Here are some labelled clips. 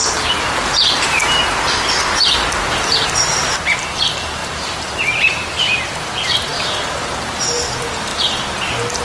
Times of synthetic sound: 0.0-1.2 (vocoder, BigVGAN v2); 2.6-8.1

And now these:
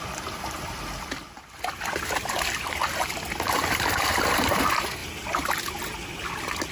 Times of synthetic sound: none

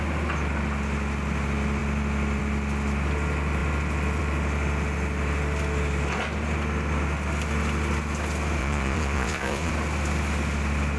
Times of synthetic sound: 8.6-9.7 (vocoder, Vocos)

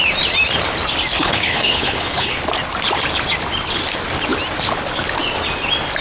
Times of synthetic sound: 1.1-2.4 (codec, HILCodec)

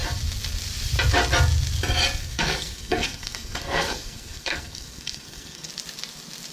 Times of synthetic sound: 2.2-5.7 (codec, SNAC)

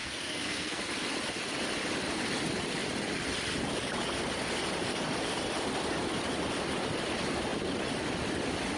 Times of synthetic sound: 0.0-0.8 (codec, SNAC)